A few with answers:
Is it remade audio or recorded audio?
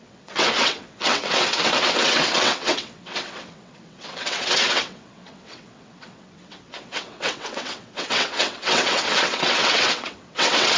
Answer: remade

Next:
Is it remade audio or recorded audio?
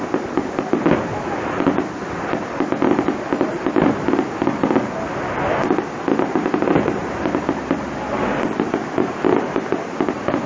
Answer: recorded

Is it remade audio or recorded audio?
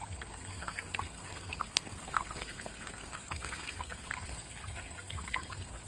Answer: remade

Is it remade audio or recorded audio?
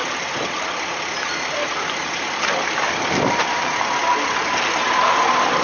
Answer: recorded